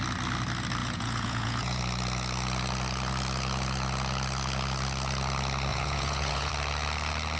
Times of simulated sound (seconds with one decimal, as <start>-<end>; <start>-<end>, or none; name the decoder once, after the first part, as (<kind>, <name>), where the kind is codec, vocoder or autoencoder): 0.8-1.8 (vocoder, Vocos); 5.7-6.5